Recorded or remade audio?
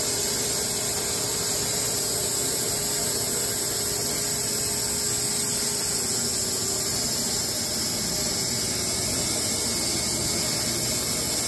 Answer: recorded